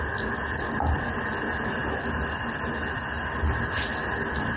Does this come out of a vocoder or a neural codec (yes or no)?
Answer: no